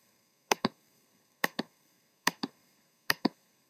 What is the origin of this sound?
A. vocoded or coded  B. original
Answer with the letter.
A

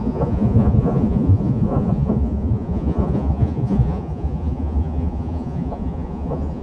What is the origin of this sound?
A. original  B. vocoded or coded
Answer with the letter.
B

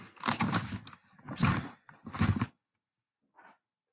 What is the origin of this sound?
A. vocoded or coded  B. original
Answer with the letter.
B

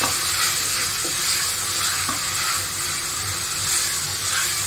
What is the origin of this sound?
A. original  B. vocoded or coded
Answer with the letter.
A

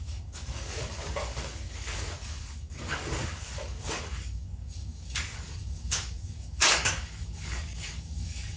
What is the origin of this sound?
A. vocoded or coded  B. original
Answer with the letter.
A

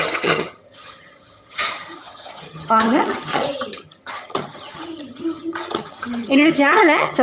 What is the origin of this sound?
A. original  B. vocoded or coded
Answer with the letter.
B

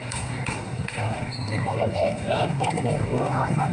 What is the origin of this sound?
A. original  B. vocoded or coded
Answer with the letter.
B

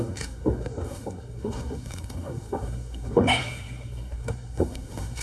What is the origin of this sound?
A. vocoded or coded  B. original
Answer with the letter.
A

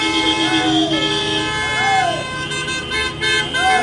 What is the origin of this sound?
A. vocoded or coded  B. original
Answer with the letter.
B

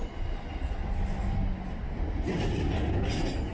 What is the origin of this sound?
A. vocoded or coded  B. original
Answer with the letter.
B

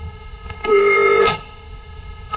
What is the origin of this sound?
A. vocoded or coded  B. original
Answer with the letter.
A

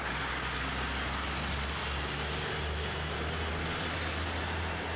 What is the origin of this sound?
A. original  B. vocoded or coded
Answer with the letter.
A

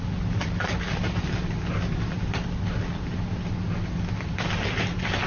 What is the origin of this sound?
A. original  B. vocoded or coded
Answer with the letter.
A